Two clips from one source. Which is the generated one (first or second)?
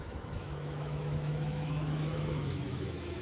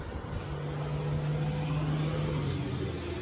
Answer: first